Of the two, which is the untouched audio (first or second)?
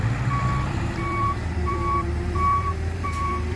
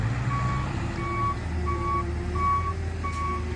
second